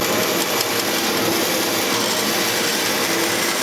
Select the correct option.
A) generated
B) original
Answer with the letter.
B